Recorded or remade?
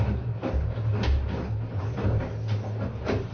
recorded